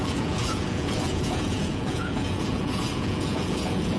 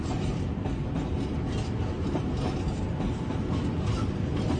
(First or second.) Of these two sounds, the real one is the second